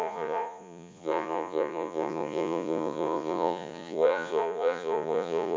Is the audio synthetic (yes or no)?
yes